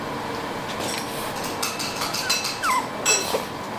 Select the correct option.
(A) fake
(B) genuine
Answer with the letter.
B